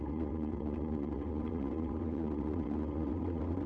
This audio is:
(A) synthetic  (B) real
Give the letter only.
A